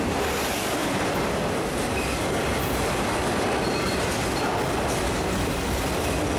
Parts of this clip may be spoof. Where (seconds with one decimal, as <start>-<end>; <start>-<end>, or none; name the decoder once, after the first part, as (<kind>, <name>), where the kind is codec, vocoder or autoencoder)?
0.8-4.6 (vocoder, BigVGAN v2)